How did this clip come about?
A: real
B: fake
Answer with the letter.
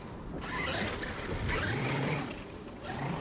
A